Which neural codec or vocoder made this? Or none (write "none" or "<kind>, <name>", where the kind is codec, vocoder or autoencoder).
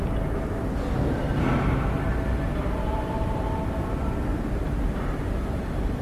none